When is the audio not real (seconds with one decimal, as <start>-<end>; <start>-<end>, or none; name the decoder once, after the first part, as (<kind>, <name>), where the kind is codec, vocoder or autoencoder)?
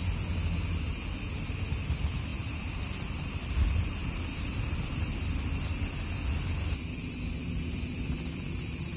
2.3-3.5 (vocoder, BigVGAN v2); 4.0-5.3